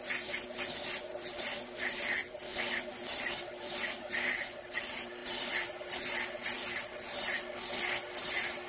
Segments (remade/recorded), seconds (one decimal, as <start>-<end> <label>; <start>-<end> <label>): 0.0-8.7 recorded